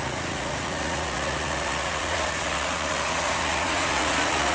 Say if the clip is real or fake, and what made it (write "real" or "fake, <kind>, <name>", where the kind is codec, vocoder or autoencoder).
fake, vocoder, Vocos